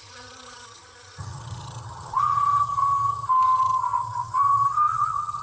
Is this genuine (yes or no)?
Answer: no